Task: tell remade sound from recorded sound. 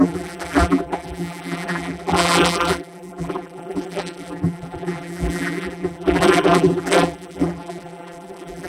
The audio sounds remade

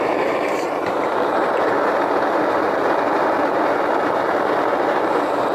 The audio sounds remade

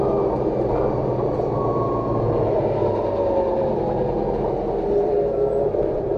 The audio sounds remade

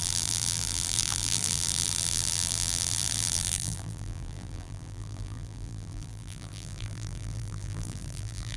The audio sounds remade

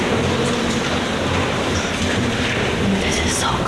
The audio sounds recorded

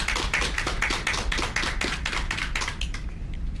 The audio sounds recorded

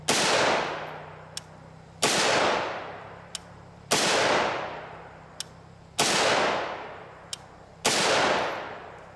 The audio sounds recorded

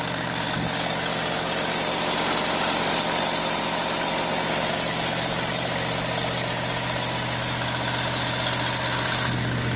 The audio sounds recorded